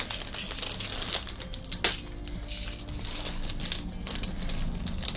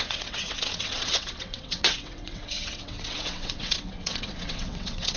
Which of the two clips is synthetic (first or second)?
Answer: second